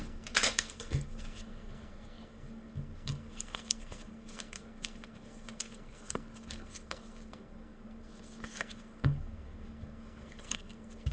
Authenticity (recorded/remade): remade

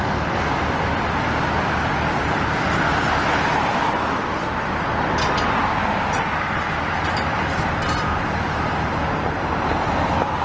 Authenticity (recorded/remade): recorded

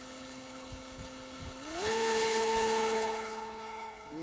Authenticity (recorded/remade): remade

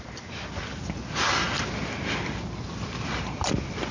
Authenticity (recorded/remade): recorded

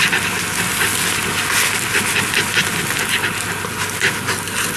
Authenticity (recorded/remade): recorded